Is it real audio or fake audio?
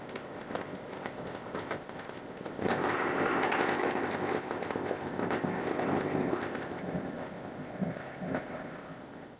fake